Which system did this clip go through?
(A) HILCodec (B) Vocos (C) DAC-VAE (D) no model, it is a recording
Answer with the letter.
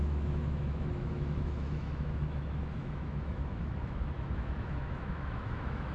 C